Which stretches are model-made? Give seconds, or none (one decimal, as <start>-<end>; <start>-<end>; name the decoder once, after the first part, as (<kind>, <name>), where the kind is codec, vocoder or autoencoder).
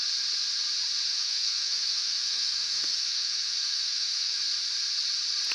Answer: 1.1-4.4 (autoencoder, DAC-VAE)